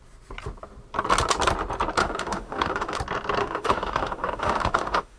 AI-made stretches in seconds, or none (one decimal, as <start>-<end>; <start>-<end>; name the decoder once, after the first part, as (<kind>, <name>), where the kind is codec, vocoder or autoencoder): 2.0-3.0 (autoencoder, DAC-VAE); 3.4-5.2